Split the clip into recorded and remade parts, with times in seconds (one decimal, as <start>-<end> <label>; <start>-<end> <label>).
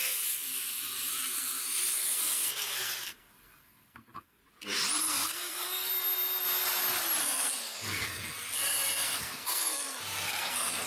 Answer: 0.0-4.4 remade; 4.4-5.0 recorded; 5.0-5.9 remade; 5.9-7.2 recorded; 7.2-10.9 remade